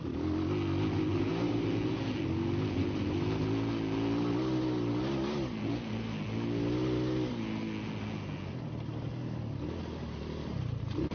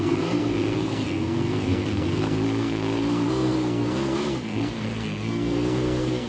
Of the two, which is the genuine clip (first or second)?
first